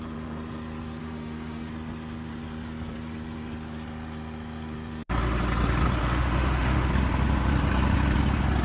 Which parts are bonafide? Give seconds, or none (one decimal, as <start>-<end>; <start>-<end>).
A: 0.0-1.0; 1.7-6.0; 6.9-8.6